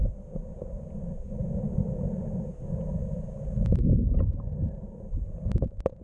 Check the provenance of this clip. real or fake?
real